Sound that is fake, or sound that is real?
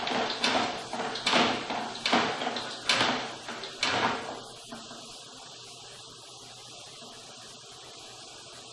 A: real